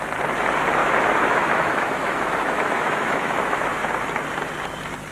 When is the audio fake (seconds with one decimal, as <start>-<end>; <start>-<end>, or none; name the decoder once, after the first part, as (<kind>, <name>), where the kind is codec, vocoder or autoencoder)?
0.8-3.9 (autoencoder, DAC-VAE)